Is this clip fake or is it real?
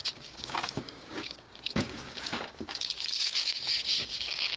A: fake